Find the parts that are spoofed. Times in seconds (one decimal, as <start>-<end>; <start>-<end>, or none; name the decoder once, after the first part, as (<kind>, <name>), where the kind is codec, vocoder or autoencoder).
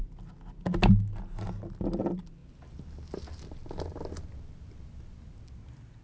none